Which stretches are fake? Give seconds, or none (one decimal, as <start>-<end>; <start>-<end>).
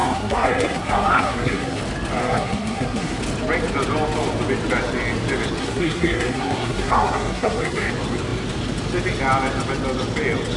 0.0-1.8; 2.2-3.2; 5.6-7.9